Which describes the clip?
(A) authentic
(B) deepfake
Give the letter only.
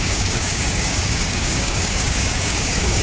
B